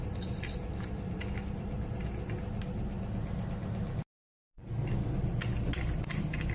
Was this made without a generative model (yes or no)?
yes